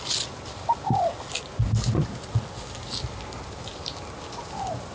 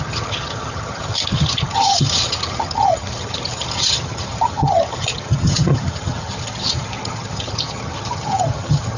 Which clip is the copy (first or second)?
second